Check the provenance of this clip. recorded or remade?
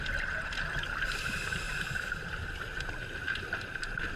recorded